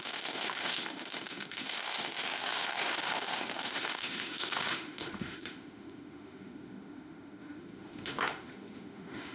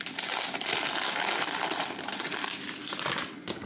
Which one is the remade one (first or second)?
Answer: first